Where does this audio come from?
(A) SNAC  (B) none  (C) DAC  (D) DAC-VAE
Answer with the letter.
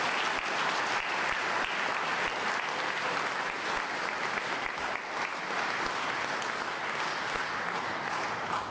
B